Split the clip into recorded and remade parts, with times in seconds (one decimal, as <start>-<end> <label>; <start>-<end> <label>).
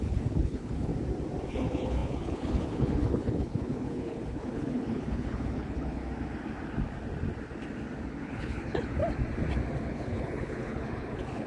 0.0-0.9 remade; 0.9-1.5 recorded; 1.5-6.0 remade; 6.0-8.2 recorded; 8.2-9.0 remade; 9.0-9.8 recorded; 9.8-11.5 remade